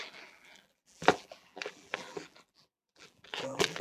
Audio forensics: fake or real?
fake